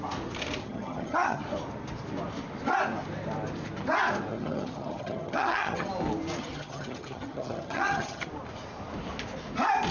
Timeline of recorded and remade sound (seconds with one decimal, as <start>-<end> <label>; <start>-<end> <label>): 0.0-0.6 recorded; 0.6-1.4 remade; 1.4-4.3 recorded; 4.3-5.9 remade; 5.9-6.4 recorded; 6.4-8.3 remade; 8.3-9.9 recorded